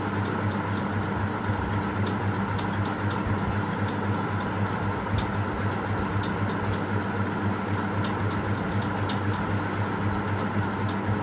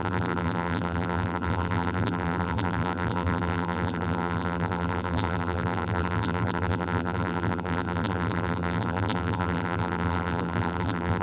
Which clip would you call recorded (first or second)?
first